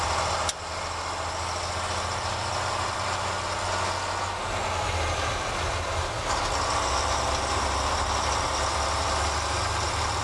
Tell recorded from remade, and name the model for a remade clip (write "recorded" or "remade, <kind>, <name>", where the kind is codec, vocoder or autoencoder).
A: recorded